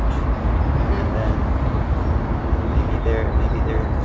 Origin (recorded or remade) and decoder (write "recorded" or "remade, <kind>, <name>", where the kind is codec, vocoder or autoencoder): recorded